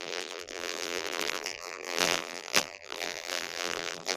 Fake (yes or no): yes